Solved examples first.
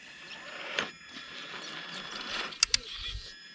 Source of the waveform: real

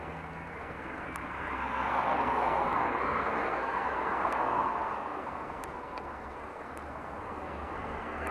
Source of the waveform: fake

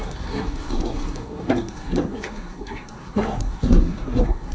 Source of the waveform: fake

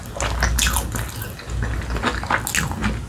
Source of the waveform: real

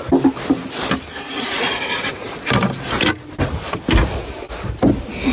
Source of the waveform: real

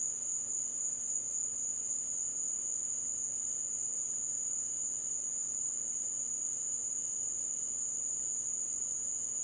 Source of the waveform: real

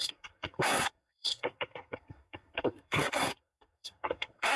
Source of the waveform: fake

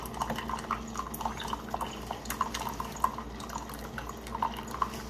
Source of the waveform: real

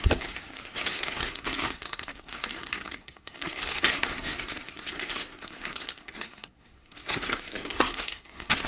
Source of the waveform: fake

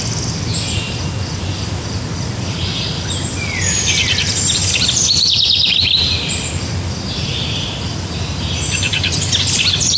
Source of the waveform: real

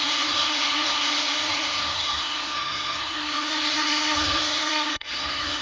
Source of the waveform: fake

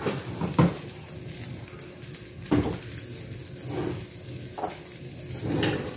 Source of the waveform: real